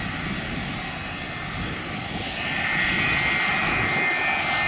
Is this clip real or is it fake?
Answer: real